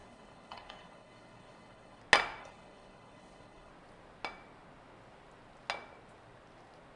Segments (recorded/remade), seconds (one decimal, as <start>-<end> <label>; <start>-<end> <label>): 0.0-2.0 remade; 2.0-2.4 recorded; 2.4-3.7 remade; 3.7-7.0 recorded